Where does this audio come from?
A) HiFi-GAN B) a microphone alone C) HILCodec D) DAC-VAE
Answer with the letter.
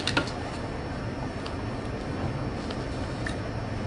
B